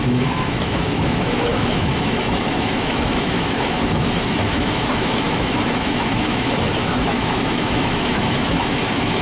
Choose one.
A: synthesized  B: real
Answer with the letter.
A